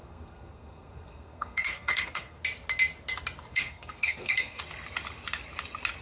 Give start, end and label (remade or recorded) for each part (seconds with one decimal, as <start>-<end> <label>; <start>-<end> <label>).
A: 0.0-2.4 remade; 2.4-3.5 recorded; 3.5-4.6 remade; 4.6-6.0 recorded